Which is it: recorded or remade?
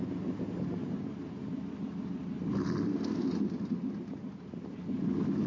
recorded